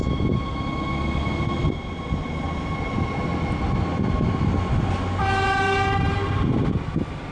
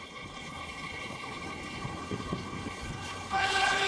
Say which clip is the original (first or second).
first